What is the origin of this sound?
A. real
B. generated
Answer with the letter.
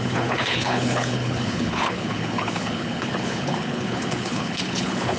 B